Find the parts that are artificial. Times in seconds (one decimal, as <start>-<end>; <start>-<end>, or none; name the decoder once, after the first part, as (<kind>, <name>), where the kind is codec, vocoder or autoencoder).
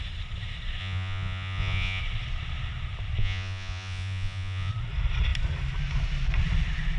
0.8-2.0 (vocoder, Vocos); 3.2-4.7